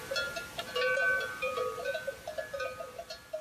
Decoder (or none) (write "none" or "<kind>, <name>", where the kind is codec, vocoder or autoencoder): none